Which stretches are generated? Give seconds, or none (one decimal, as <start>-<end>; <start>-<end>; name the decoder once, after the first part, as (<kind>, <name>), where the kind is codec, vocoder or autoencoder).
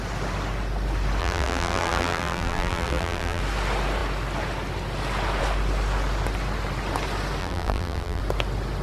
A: 1.2-3.4 (vocoder, BigVGAN v2); 7.4-8.2